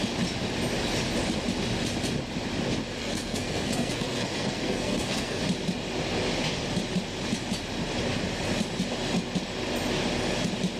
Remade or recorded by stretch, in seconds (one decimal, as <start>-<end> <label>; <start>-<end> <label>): 0.0-3.0 recorded; 3.0-5.4 remade; 5.4-10.8 recorded